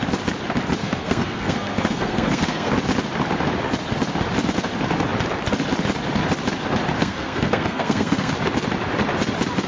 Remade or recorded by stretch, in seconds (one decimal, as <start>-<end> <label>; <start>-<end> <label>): 0.0-0.8 recorded; 0.8-2.7 remade; 2.7-7.0 recorded; 7.0-8.3 remade; 8.3-9.7 recorded